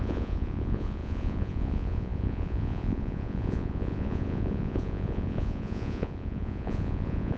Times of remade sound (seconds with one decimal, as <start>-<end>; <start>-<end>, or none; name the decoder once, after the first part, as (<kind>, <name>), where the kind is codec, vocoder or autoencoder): 0.0-7.4 (vocoder, Vocos)